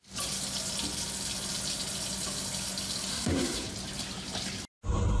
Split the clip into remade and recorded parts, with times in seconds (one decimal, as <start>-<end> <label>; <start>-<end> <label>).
0.0-3.1 recorded; 3.1-3.7 remade; 3.7-5.2 recorded